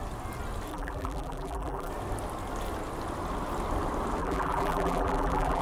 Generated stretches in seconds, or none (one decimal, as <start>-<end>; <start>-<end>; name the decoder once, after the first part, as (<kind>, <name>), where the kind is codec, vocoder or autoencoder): 0.7-1.9 (vocoder, BigVGAN v2); 4.2-5.6